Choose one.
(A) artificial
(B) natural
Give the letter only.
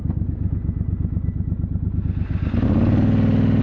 B